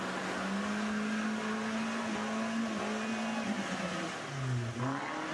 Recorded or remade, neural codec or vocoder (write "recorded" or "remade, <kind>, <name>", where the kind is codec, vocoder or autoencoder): recorded